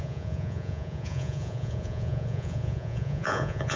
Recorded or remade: remade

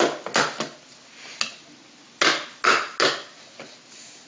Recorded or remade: recorded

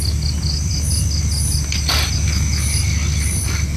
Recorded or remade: recorded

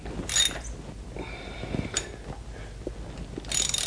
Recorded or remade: recorded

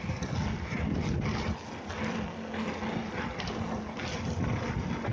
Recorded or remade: remade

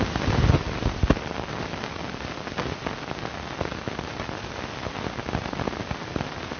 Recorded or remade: recorded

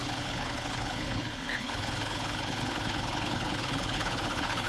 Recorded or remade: remade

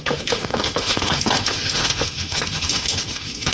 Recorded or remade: remade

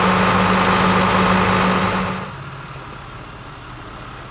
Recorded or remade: recorded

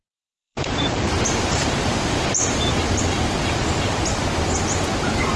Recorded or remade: remade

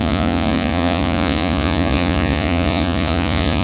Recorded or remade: remade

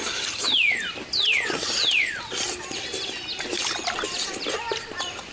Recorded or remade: recorded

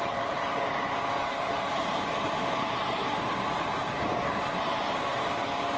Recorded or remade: remade